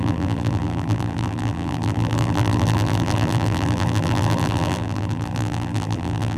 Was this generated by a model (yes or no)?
yes